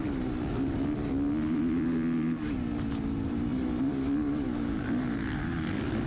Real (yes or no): yes